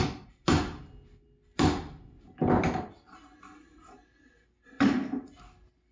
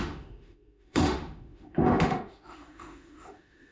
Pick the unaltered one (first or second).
first